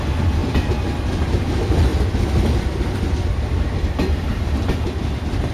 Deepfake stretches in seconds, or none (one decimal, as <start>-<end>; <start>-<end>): 0.4-1.3; 1.9-5.5